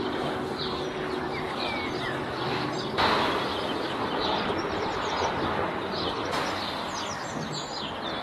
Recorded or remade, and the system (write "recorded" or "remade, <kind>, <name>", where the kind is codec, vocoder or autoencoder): recorded